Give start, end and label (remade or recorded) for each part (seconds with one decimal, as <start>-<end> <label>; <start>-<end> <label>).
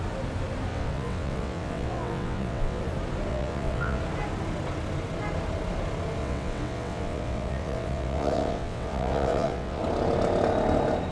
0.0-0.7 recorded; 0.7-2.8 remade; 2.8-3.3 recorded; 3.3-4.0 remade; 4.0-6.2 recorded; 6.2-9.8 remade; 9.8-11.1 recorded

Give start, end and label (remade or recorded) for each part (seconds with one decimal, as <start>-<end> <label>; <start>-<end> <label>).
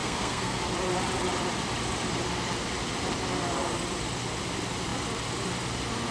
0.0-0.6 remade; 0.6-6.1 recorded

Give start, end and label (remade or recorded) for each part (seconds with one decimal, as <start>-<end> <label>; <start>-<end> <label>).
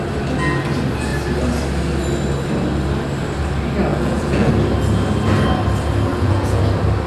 0.0-3.9 recorded; 3.9-4.5 remade; 4.5-6.1 recorded; 6.1-6.6 remade; 6.6-7.1 recorded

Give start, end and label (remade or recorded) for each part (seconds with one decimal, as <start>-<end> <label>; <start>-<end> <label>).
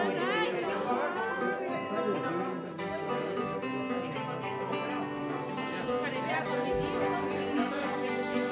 0.0-8.5 recorded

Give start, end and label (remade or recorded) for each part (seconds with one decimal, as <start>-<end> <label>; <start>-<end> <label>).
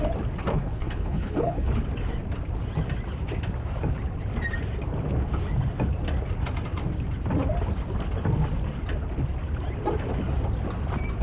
0.0-0.5 recorded; 0.5-1.7 remade; 1.7-11.2 recorded